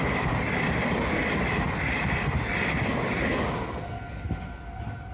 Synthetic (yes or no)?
no